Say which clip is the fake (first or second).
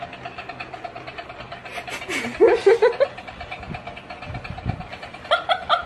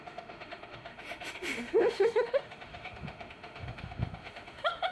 second